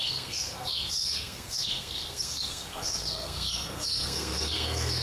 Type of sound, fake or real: fake